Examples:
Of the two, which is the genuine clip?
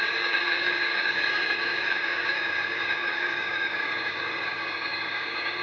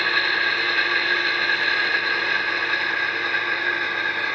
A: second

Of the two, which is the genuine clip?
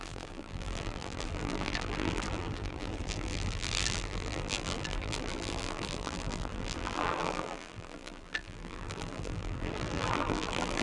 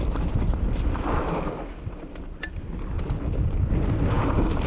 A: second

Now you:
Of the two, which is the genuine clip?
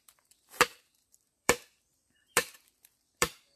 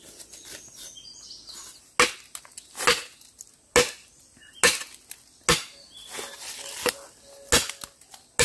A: second